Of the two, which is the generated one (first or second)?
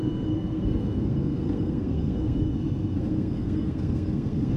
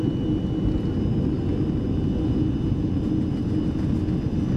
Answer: first